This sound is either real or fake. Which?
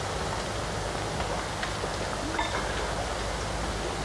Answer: real